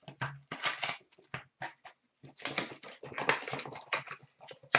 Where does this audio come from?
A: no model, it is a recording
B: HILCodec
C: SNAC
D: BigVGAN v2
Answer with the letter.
A